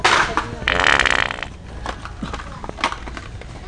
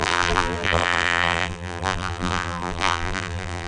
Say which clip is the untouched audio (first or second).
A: first